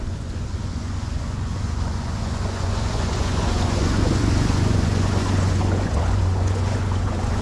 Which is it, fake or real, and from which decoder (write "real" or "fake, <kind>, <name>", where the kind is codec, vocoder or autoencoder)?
fake, vocoder, Vocos